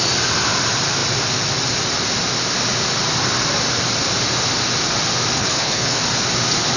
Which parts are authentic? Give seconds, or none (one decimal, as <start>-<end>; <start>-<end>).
0.0-5.4; 6.0-6.8